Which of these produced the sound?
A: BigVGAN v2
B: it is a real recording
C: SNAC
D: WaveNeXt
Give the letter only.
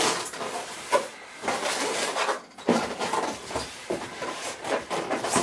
A